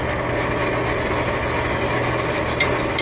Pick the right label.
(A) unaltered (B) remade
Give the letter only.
A